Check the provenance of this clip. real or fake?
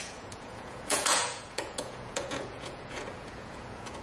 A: fake